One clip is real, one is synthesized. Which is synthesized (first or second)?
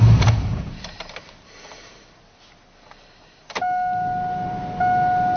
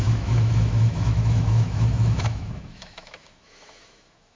second